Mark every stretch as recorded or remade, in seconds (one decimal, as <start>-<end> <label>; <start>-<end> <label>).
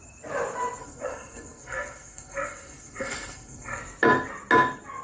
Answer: 0.0-0.8 recorded; 0.8-3.8 remade; 3.8-5.0 recorded